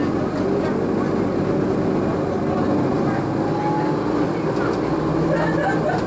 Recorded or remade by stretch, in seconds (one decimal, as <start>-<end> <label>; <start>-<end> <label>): 0.0-6.1 recorded